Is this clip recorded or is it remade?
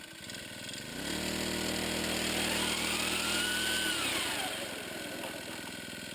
recorded